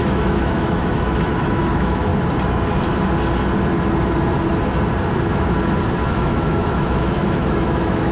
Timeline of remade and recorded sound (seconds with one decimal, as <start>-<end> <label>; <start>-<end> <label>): 0.0-2.1 remade; 2.1-6.1 recorded; 6.1-8.1 remade